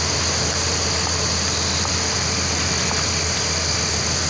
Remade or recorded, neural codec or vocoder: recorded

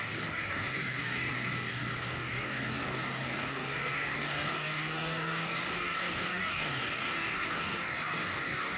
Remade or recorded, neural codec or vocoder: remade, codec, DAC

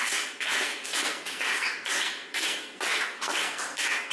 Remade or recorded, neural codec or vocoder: remade, codec, SNAC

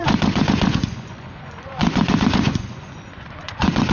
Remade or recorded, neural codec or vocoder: remade, vocoder, Vocos